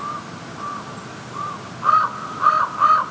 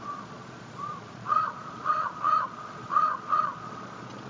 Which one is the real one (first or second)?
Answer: first